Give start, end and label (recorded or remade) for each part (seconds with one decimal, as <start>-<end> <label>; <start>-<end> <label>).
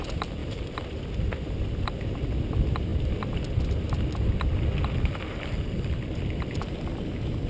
0.0-0.4 recorded; 0.4-1.5 remade; 1.5-7.5 recorded